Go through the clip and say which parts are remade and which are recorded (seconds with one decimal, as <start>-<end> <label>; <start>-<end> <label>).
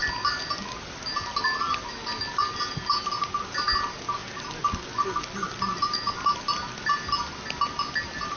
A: 0.0-8.4 recorded